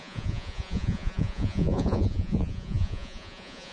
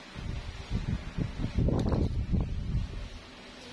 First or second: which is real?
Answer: second